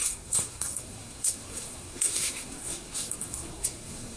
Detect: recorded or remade remade